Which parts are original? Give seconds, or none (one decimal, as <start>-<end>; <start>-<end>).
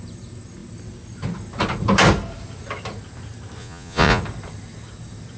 0.0-3.6; 4.2-5.4